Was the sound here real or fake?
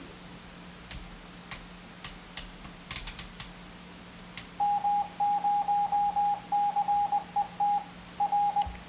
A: real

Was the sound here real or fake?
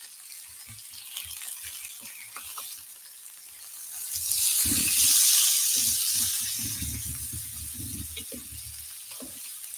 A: real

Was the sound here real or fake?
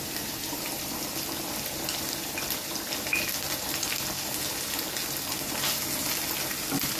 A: real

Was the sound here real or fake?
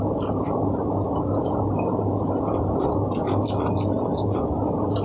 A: real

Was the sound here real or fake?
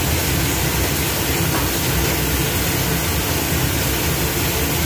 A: real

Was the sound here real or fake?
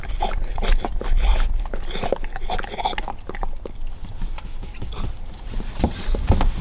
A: real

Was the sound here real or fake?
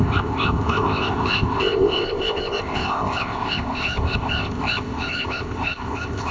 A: fake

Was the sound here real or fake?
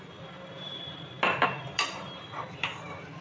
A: fake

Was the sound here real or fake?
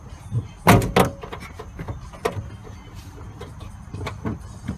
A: real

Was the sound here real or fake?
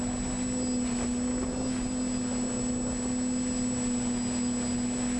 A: real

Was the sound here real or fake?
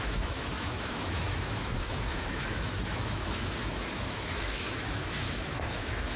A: fake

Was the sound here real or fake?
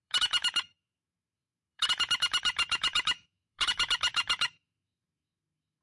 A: fake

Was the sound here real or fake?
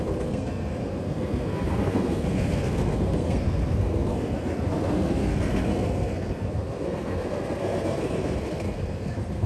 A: fake